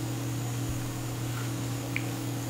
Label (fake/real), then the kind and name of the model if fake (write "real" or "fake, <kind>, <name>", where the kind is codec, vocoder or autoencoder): fake, codec, DAC